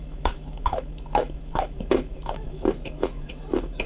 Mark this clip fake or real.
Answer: fake